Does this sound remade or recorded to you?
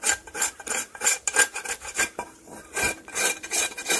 remade